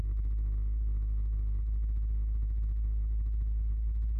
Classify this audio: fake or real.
real